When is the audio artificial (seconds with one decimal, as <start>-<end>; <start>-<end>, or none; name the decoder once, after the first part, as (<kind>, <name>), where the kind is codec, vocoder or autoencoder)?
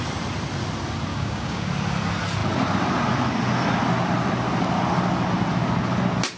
1.1-1.7 (codec, DAC)